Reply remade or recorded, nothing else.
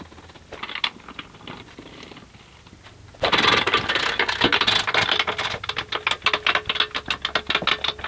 recorded